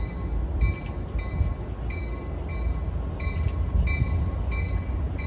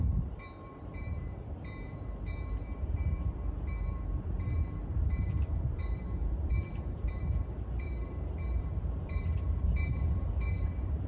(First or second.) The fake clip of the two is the second